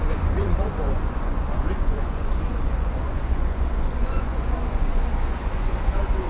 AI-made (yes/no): yes